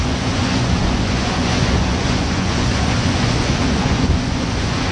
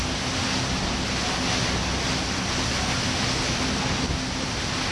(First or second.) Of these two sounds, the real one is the second